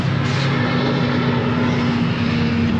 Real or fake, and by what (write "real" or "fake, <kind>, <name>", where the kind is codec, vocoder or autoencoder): real